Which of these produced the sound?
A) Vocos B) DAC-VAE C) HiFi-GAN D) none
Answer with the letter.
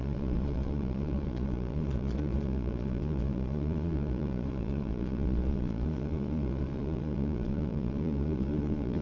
A